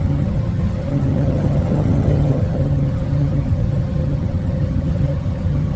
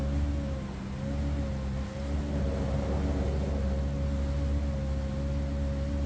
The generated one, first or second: first